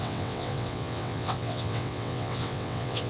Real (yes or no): no